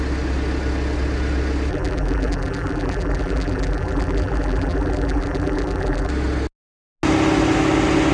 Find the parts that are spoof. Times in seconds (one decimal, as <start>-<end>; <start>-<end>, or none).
1.7-6.1